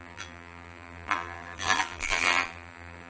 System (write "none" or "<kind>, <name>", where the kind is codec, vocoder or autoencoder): vocoder, BigVGAN v2